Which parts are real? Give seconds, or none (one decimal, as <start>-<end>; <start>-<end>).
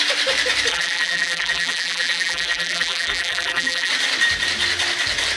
0.0-0.7; 3.9-5.4